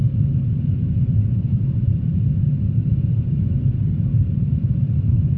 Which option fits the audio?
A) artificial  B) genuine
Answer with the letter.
A